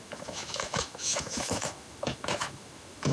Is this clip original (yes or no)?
no